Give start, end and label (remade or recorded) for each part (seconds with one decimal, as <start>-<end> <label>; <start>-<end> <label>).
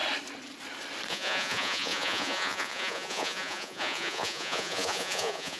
0.0-1.1 recorded; 1.1-5.6 remade